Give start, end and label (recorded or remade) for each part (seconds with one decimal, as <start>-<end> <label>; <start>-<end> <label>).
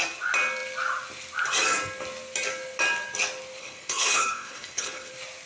0.0-3.6 recorded; 3.6-5.1 remade; 5.1-5.5 recorded